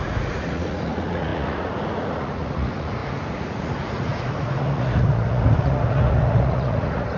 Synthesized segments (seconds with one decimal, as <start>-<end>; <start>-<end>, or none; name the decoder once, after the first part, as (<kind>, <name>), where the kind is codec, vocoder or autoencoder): 0.0-7.2 (vocoder, Vocos)